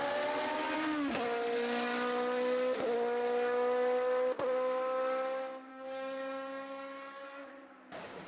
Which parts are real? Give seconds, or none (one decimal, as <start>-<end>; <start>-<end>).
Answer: 0.0-5.7; 7.4-8.3